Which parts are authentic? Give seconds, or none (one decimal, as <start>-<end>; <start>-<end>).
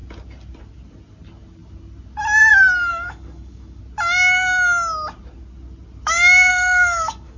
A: 0.0-2.9; 3.8-6.5